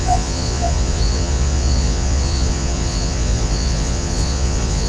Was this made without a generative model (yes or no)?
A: no